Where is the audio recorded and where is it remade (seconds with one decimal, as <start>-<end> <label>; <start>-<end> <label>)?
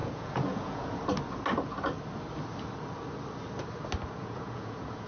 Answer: 0.0-1.0 remade; 1.0-4.1 recorded; 4.1-5.1 remade